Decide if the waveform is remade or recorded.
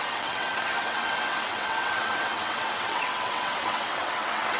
remade